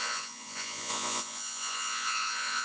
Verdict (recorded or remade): remade